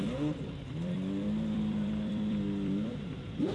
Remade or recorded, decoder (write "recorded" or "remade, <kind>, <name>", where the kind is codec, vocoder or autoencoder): remade, vocoder, BigVGAN v2